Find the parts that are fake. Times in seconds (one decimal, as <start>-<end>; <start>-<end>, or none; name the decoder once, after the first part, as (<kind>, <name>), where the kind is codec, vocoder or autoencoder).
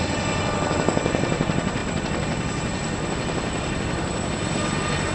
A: 1.8-4.4 (vocoder, BigVGAN v2)